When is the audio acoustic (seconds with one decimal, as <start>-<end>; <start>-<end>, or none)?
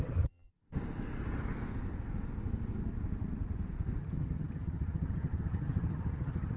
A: 0.5-4.0